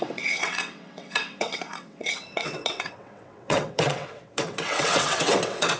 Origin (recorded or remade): remade